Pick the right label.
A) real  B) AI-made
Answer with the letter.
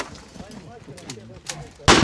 A